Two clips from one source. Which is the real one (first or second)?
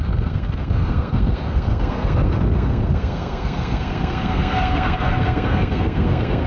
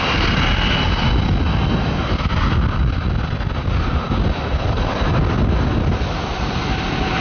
second